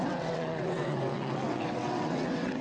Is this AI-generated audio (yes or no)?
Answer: yes